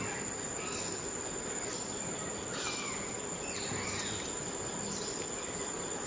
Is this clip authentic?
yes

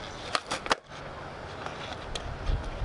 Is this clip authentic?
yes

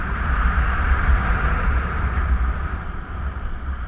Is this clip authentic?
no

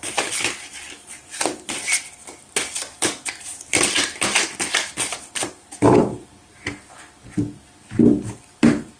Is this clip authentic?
yes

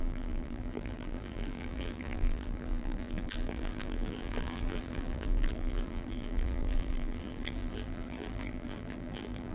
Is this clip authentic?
no